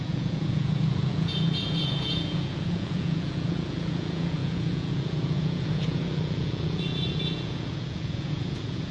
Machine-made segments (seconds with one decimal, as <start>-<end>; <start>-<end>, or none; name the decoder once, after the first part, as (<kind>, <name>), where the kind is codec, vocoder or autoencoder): 0.0-8.9 (vocoder, Vocos)